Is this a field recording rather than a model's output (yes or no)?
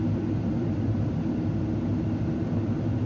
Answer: no